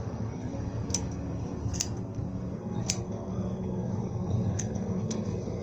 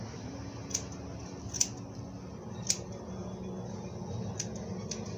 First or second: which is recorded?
second